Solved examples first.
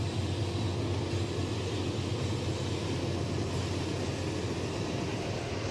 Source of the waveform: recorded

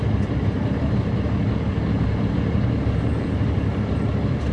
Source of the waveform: remade